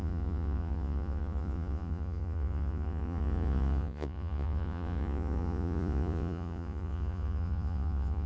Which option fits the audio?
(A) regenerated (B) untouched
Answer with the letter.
A